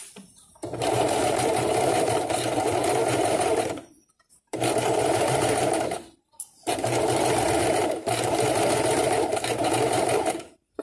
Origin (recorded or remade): remade